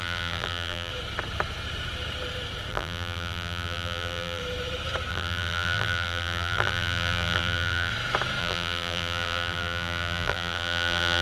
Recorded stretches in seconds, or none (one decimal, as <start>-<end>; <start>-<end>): 0.9-2.7; 4.4-5.1; 7.9-8.4